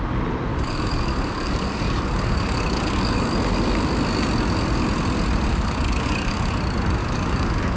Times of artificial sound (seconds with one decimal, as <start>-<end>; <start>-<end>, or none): 0.5-3.8; 5.5-6.5; 7.0-7.8